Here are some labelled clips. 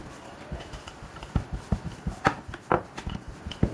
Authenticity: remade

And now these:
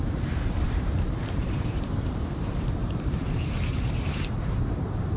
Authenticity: remade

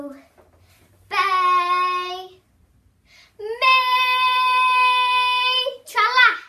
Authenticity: recorded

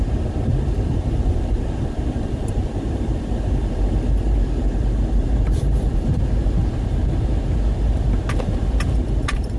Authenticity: remade